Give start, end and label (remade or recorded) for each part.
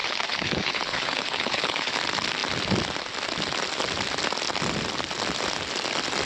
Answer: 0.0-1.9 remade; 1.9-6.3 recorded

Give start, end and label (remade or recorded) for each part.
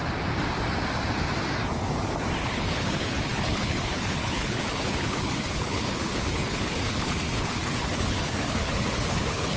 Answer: 0.0-2.4 recorded; 2.4-9.6 remade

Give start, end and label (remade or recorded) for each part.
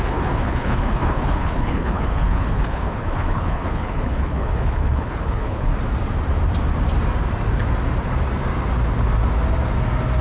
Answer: 0.0-5.7 remade; 5.7-10.2 recorded